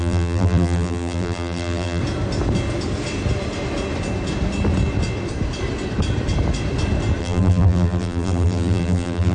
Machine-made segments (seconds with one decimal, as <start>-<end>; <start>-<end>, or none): 0.0-2.0; 7.2-9.3